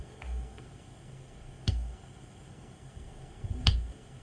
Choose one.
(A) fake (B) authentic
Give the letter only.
A